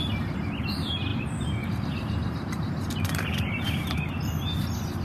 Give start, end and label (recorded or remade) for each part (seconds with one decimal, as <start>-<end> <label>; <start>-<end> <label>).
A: 0.0-1.1 recorded; 1.1-4.1 remade; 4.1-5.0 recorded